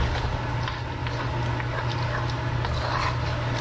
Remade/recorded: recorded